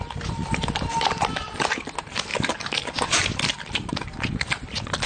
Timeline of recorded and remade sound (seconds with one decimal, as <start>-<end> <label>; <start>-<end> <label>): 0.0-2.3 recorded; 2.3-3.1 remade; 3.1-5.1 recorded